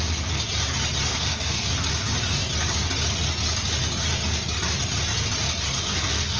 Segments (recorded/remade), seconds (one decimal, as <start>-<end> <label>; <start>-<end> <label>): 0.0-1.1 recorded; 1.1-1.7 remade; 1.7-5.7 recorded; 5.7-6.4 remade